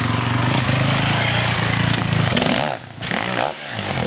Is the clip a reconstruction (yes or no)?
yes